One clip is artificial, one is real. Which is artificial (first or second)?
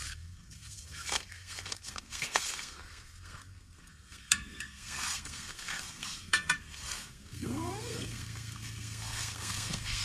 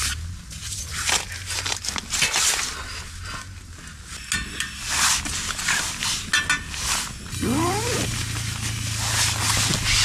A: first